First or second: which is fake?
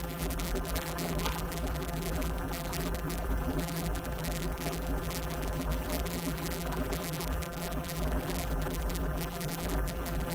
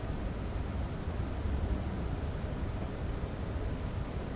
first